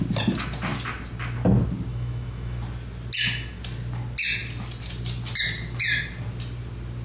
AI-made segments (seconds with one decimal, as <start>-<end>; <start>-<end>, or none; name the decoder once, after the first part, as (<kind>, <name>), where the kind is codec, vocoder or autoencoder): 1.9-2.6 (autoencoder, DAC-VAE)